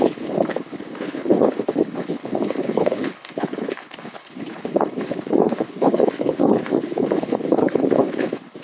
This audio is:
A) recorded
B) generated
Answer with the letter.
B